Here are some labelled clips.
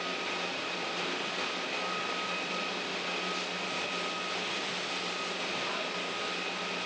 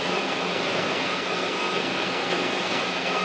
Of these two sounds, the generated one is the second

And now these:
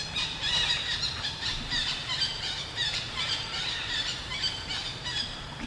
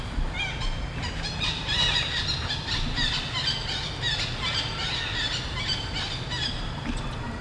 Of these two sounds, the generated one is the first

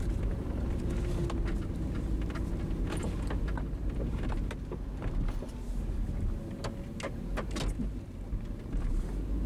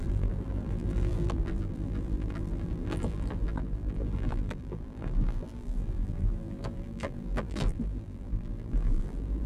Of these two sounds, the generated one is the second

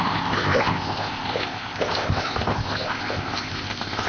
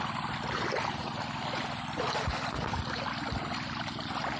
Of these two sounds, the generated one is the first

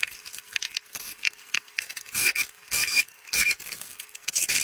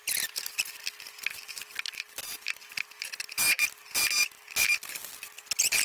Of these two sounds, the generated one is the first